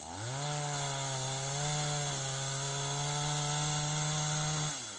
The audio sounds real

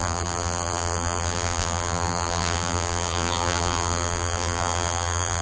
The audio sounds fake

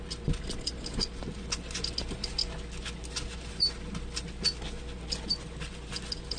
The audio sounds real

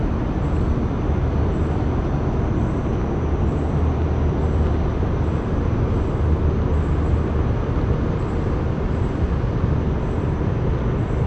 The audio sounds real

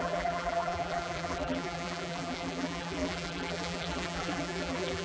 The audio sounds fake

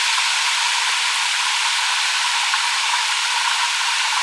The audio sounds fake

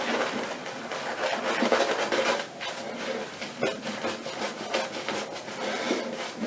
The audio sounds fake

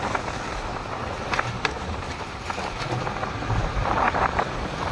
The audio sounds fake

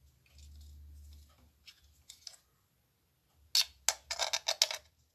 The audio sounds real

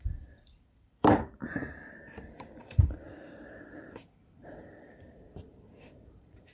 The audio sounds fake